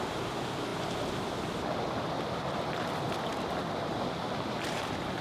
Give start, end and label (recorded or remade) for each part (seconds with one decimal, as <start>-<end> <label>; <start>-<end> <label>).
0.0-5.2 recorded